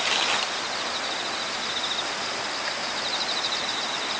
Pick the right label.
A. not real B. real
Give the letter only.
B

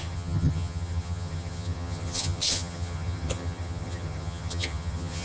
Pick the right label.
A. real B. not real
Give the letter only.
B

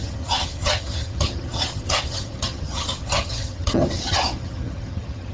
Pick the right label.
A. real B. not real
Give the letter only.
B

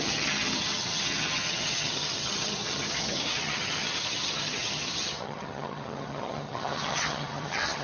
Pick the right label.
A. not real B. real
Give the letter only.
A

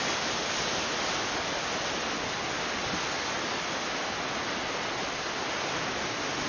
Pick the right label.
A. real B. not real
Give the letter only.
A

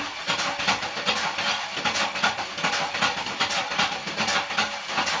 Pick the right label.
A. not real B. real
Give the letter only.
B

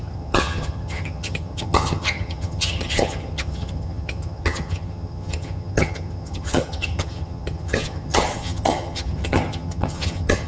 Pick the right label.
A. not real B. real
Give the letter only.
A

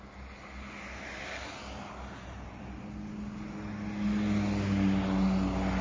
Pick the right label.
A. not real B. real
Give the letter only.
B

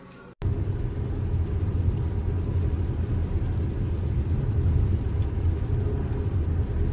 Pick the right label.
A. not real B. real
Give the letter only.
B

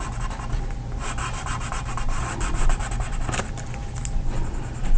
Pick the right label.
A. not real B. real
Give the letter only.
B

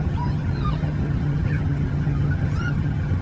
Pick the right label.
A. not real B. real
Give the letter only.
A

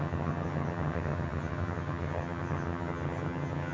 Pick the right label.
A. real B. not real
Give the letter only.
B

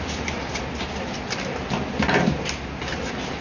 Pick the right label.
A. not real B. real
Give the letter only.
B